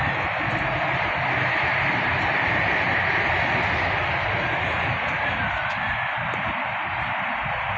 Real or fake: real